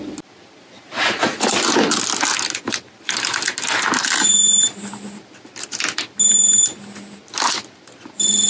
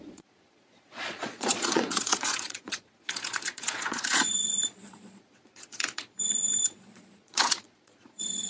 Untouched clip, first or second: first